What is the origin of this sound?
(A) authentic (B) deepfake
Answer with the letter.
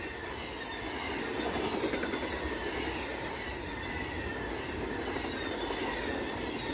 A